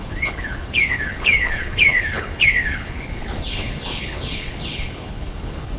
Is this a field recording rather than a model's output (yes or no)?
no